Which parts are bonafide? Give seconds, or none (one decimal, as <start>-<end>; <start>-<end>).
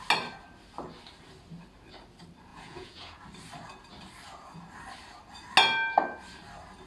0.0-2.5; 3.2-6.9